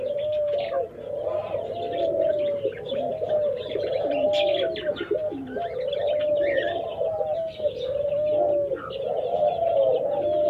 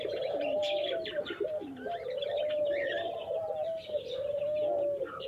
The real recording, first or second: first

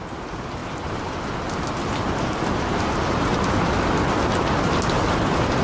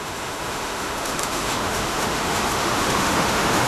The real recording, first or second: first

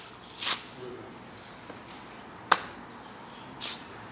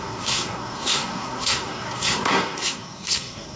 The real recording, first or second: first